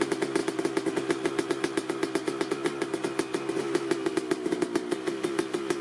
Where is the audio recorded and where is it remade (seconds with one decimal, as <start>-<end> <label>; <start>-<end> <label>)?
0.0-5.8 recorded